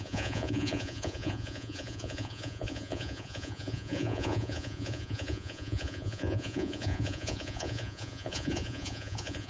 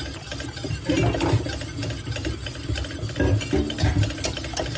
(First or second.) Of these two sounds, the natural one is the second